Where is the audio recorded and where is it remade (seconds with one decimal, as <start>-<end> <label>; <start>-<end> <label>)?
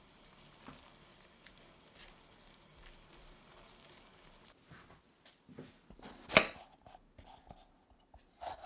0.0-8.7 recorded